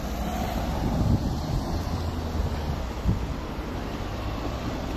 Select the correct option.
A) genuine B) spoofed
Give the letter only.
A